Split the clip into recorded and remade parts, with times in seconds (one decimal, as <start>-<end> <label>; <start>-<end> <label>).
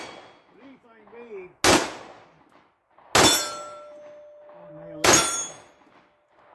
0.0-6.5 recorded